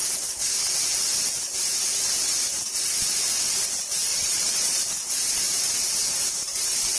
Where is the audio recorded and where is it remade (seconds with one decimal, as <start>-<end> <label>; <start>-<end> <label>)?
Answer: 0.0-4.1 recorded; 4.1-4.8 remade; 4.8-7.0 recorded